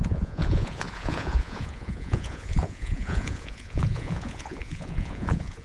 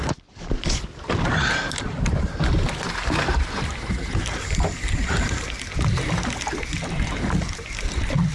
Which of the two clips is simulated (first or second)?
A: first